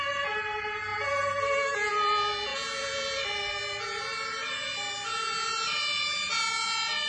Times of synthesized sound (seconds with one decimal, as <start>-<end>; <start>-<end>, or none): none